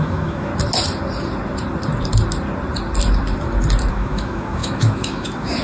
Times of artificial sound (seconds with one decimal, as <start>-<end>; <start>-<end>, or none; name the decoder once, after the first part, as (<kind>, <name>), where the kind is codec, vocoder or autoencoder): 0.0-0.5 (autoencoder, DAC-VAE); 3.9-5.6

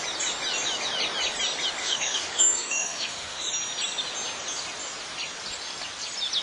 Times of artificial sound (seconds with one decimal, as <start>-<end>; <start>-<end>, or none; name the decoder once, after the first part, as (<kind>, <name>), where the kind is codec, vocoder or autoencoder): 1.8-3.5 (autoencoder, DAC-VAE)

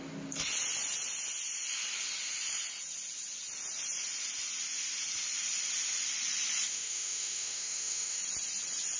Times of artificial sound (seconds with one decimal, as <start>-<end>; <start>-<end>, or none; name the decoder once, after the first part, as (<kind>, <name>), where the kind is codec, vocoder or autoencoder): 6.7-8.2 (autoencoder, DAC-VAE)

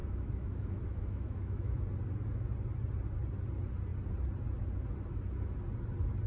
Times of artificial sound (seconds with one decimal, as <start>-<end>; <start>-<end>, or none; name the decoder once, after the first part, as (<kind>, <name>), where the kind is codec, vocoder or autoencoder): 0.0-1.8 (autoencoder, DAC-VAE)

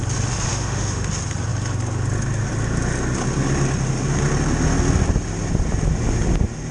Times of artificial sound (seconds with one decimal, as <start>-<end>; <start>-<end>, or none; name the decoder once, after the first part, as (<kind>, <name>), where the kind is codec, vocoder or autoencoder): 0.5-1.1 (autoencoder, DAC-VAE)

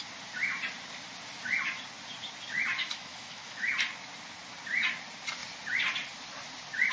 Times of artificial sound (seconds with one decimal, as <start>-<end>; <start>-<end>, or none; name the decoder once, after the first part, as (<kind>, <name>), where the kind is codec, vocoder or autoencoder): 2.8-3.7 (autoencoder, DAC-VAE)

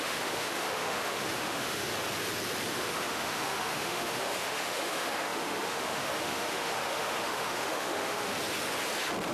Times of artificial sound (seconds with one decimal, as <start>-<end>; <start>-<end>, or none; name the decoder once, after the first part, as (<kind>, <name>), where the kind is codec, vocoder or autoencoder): 0.0-1.9 (autoencoder, DAC-VAE); 2.7-8.3

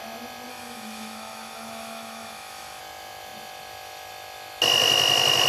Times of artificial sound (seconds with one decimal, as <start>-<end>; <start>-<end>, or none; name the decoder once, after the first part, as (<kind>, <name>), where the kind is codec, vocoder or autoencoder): 0.5-2.8 (autoencoder, DAC-VAE)